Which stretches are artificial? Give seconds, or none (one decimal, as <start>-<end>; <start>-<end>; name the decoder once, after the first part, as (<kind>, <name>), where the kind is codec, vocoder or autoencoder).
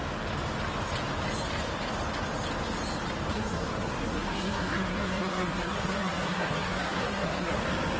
3.3-7.6 (codec, SNAC)